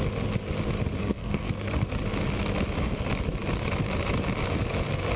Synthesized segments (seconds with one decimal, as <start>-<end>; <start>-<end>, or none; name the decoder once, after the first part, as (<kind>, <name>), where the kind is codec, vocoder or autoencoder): 1.0-1.9 (codec, SNAC)